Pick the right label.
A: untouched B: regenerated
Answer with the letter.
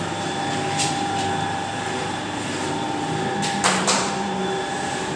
B